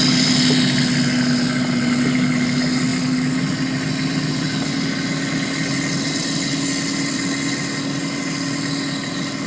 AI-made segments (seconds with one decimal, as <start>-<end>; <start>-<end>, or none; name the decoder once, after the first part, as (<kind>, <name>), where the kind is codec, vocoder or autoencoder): none